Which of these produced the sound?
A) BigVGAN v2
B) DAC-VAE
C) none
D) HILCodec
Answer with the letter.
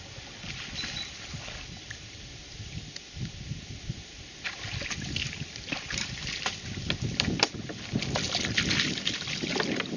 C